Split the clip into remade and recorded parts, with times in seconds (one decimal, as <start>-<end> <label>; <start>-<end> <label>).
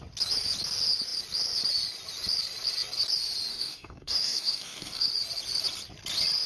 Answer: 0.0-3.5 recorded; 3.5-5.1 remade; 5.1-6.5 recorded